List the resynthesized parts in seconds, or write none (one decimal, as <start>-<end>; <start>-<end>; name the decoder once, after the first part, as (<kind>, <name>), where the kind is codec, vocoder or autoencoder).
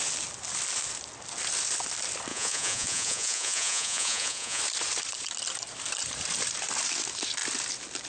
2.3-4.6 (vocoder, Vocos)